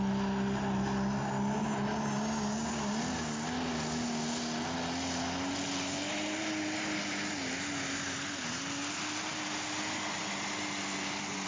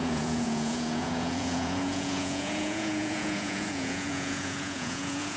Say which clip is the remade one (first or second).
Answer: second